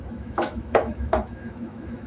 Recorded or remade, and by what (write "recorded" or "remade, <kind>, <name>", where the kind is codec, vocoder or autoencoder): remade, autoencoder, DAC-VAE